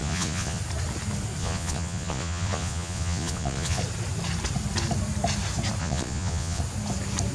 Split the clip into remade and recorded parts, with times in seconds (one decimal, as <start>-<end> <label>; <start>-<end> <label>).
0.0-0.6 remade; 0.6-1.4 recorded; 1.4-3.8 remade; 3.8-5.8 recorded; 5.8-6.6 remade; 6.6-7.3 recorded